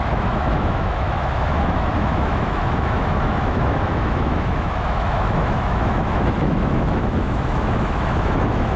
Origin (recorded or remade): remade